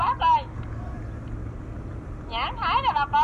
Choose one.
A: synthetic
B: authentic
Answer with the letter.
B